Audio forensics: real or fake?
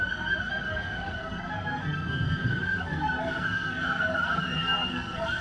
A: fake